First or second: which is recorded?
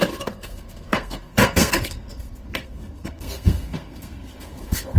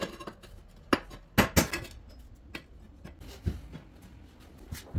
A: second